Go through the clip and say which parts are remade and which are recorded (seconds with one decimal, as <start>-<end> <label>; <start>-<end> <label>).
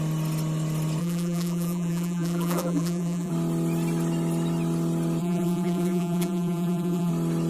0.0-1.0 recorded; 1.0-3.3 remade; 3.3-5.2 recorded; 5.2-7.1 remade; 7.1-7.5 recorded